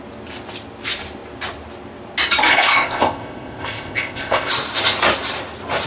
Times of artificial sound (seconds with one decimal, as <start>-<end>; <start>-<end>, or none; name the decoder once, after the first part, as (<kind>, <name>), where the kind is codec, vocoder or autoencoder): 2.5-4.5 (codec, ZipCodec)